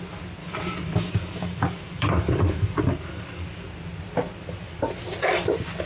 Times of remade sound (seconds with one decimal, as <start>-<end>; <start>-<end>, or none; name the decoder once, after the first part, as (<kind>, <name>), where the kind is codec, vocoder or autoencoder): 0.4-3.7 (codec, DAC)